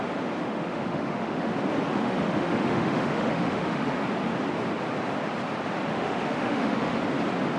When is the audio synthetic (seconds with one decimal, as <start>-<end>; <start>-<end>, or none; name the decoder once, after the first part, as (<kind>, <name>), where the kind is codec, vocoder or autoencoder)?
0.4-1.5 (autoencoder, DAC-VAE); 1.9-4.0; 5.9-7.0